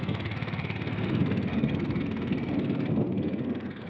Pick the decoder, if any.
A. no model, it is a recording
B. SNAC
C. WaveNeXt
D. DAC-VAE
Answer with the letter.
B